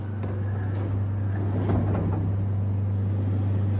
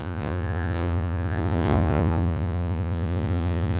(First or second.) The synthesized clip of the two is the second